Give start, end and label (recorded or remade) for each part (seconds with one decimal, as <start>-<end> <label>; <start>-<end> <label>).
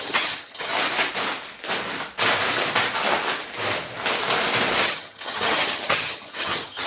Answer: 0.0-0.7 remade; 0.7-4.8 recorded; 4.8-6.9 remade